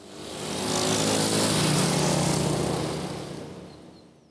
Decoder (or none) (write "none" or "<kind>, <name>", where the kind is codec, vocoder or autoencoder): none